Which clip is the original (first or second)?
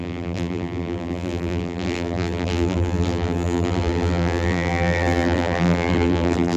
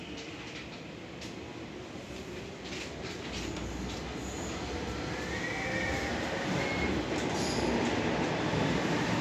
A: second